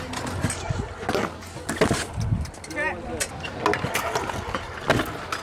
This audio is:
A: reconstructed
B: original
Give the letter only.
B